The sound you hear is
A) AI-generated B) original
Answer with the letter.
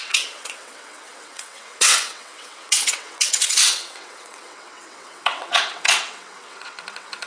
A